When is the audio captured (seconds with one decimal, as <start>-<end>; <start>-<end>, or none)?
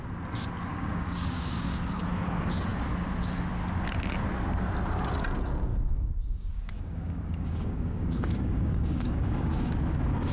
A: 0.0-0.7; 2.0-5.7; 9.7-10.3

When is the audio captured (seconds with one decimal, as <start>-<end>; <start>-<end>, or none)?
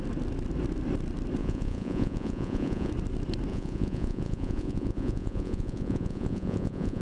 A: 0.0-1.4; 2.9-3.5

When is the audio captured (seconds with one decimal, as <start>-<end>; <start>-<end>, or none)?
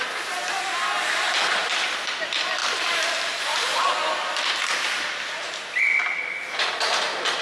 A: 0.0-7.4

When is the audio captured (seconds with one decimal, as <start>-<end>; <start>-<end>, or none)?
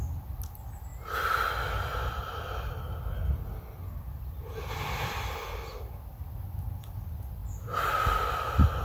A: 0.0-8.8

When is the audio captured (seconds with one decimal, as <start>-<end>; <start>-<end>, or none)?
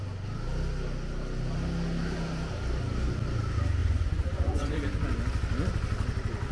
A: 0.0-3.8; 4.7-6.5